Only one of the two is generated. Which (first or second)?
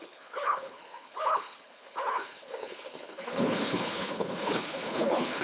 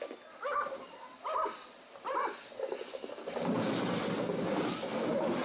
first